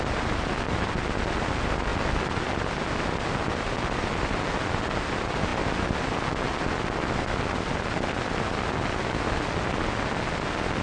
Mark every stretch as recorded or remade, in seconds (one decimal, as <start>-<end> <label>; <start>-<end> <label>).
0.0-10.8 recorded